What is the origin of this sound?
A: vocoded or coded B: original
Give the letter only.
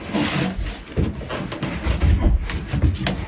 B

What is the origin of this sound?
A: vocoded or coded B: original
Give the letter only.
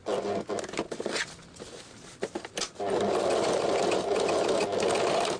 B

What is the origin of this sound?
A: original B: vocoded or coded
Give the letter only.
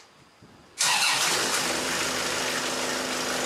A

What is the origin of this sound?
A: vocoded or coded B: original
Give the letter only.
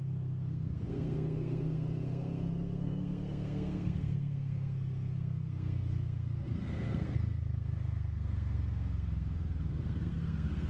A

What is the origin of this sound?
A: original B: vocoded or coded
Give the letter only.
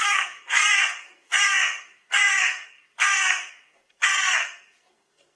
B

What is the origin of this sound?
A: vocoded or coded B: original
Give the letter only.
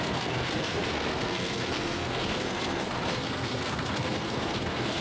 A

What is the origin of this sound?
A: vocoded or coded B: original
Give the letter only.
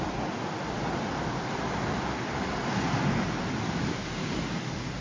B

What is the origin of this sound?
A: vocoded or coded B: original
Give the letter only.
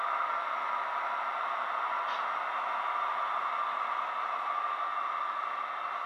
B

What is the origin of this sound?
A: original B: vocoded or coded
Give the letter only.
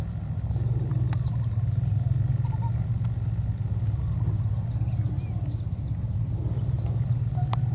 A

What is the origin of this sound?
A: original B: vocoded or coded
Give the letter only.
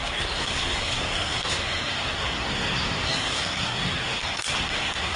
B